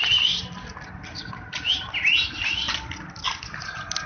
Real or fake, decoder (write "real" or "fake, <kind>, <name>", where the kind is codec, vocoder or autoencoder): real